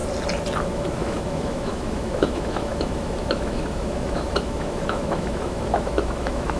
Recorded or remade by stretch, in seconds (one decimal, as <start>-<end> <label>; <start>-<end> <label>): 0.0-0.6 recorded; 0.6-6.6 remade